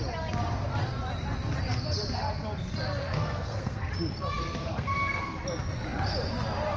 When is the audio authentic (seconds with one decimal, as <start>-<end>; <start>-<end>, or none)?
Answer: 0.0-3.0; 3.9-4.4; 5.2-6.8